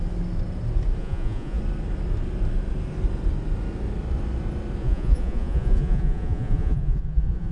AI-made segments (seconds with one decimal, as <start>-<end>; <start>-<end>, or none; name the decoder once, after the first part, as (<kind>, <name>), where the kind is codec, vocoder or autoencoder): 1.0-1.6 (vocoder, Vocos); 4.8-7.5